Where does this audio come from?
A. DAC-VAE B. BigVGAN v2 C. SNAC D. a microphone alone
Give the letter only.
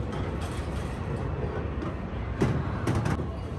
D